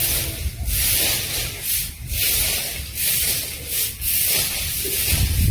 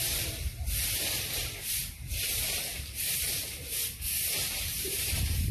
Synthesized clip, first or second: second